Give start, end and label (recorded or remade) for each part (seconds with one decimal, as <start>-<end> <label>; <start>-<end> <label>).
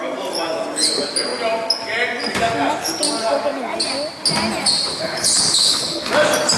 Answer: 0.0-4.9 recorded; 4.9-6.1 remade; 6.1-6.6 recorded